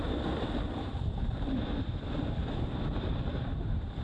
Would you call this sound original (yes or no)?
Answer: yes